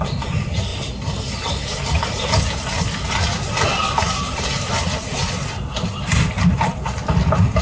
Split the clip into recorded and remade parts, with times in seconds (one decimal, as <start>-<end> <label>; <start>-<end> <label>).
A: 0.0-7.6 recorded